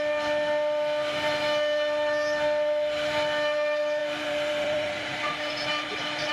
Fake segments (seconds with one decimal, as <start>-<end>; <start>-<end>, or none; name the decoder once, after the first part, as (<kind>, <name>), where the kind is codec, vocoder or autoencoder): 4.0-6.3 (vocoder, BigVGAN v2)